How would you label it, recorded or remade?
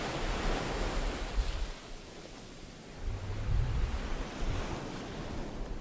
recorded